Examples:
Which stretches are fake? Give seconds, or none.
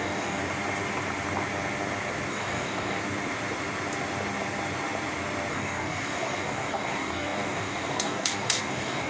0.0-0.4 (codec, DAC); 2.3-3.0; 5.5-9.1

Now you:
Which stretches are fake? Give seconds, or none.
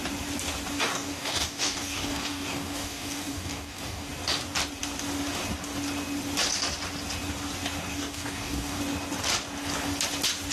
0.9-4.1 (codec, DAC); 7.9-8.8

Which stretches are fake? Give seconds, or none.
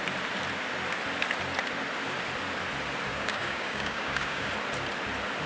3.1-4.5 (codec, DAC)